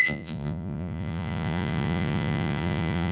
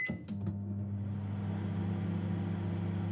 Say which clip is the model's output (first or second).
first